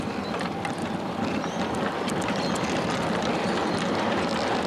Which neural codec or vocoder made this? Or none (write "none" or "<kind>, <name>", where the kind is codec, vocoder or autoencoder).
none